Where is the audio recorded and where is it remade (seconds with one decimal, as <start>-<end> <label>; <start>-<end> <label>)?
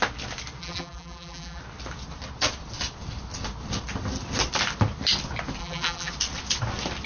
0.0-0.6 recorded; 0.6-1.6 remade; 1.6-5.6 recorded; 5.6-6.1 remade; 6.1-7.1 recorded